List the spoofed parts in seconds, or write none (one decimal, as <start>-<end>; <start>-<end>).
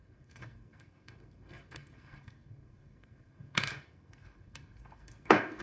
0.0-5.6